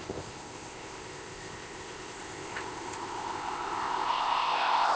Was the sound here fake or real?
fake